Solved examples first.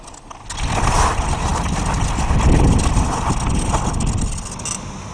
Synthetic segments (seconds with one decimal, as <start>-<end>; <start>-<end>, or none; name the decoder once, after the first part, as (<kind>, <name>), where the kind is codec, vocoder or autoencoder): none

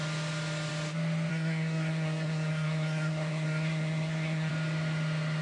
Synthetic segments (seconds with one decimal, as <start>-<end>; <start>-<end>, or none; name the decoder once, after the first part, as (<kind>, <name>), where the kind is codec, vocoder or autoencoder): 1.3-4.5 (codec, SNAC)

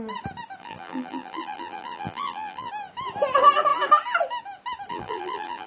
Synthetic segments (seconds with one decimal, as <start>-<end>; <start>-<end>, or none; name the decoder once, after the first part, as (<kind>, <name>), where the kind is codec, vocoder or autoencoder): 0.6-2.7 (vocoder, BigVGAN v2); 4.9-5.7